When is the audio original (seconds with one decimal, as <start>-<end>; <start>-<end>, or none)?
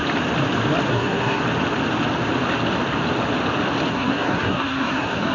0.0-0.9; 1.4-3.9